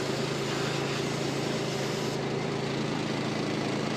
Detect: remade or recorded recorded